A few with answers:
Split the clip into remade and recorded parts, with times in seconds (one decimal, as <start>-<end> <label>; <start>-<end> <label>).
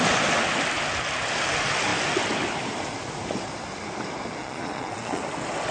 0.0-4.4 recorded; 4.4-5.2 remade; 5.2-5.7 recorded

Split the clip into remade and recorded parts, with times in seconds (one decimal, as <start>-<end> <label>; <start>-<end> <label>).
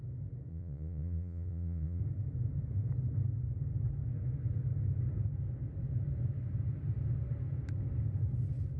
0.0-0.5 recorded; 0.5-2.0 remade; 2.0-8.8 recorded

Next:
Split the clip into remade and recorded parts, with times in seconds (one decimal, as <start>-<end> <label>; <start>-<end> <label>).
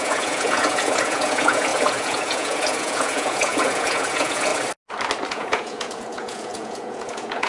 0.0-4.5 remade; 4.5-5.3 recorded; 5.3-7.5 remade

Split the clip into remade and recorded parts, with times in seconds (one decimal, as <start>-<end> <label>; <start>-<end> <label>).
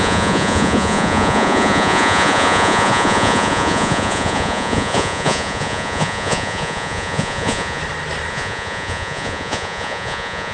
0.0-7.8 remade; 7.8-8.3 recorded; 8.3-10.5 remade